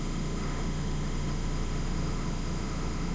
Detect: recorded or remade remade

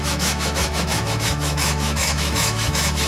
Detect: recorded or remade remade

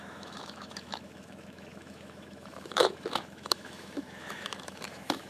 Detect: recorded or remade remade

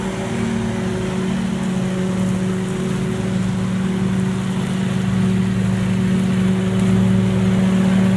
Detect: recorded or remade recorded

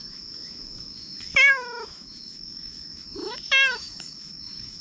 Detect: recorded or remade remade